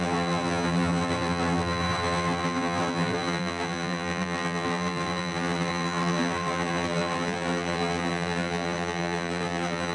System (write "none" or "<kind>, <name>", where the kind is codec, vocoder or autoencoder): vocoder, BigVGAN v2